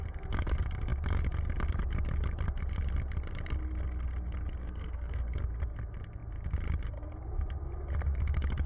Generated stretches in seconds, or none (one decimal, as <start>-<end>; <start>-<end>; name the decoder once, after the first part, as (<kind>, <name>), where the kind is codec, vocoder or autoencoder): 4.6-5.3 (codec, SNAC)